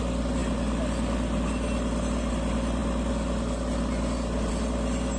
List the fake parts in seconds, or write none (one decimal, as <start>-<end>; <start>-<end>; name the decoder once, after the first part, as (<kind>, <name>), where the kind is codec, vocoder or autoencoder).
none